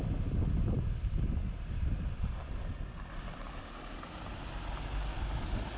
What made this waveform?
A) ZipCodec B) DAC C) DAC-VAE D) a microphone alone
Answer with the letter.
D